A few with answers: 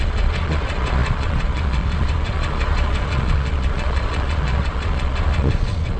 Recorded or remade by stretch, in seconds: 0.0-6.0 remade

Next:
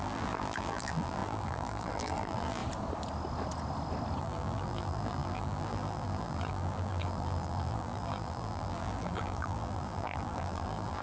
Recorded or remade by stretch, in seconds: 0.0-2.6 remade; 2.6-4.2 recorded; 4.2-11.0 remade

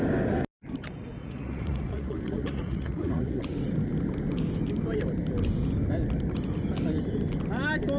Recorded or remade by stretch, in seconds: 0.0-1.2 recorded; 1.2-3.4 remade; 3.4-8.0 recorded

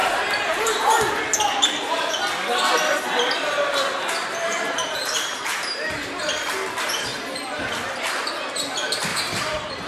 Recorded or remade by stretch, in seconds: 0.0-1.1 remade; 1.1-4.2 recorded; 4.2-6.2 remade; 6.2-9.1 recorded; 9.1-9.9 remade

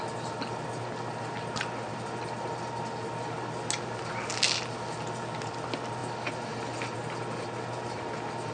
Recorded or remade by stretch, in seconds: 0.0-8.5 recorded

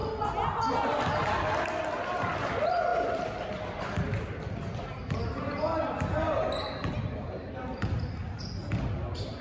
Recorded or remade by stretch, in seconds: 0.0-9.4 recorded

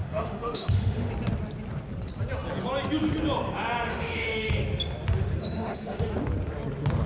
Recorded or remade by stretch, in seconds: 0.0-1.1 remade; 1.1-3.9 recorded; 3.9-4.5 remade; 4.5-5.4 recorded; 5.4-6.1 remade; 6.1-7.1 recorded